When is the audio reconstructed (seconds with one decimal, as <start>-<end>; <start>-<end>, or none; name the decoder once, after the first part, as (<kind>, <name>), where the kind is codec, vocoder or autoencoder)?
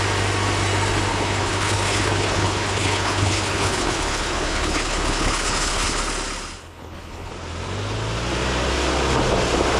1.1-6.0 (codec, HILCodec); 6.6-7.3